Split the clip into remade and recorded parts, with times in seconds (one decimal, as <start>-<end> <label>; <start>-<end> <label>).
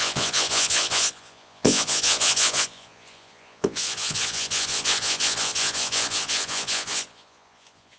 0.0-8.0 remade